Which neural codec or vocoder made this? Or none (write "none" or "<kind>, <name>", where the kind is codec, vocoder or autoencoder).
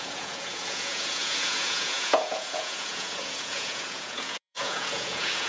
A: vocoder, Vocos